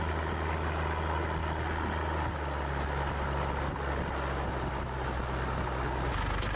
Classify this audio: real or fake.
real